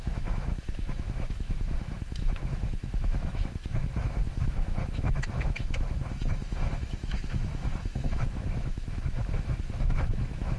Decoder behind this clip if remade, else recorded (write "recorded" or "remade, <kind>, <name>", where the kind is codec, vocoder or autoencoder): remade, autoencoder, DAC-VAE